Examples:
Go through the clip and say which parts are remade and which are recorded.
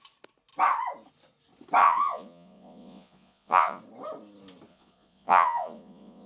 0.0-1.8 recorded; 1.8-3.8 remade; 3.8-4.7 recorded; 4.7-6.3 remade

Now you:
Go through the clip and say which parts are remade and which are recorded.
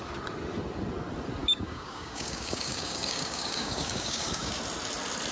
0.0-1.4 recorded; 1.4-4.6 remade; 4.6-5.3 recorded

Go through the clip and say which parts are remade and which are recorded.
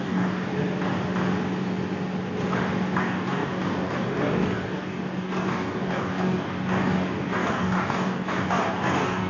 0.0-0.5 remade; 0.5-3.0 recorded; 3.0-9.3 remade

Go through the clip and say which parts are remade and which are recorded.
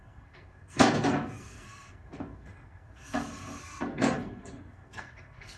0.0-5.6 remade